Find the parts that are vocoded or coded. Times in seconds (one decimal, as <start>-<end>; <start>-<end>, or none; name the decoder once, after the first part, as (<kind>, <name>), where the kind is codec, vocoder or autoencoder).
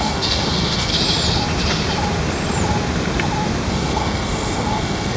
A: 0.0-0.9 (codec, SNAC); 3.7-5.2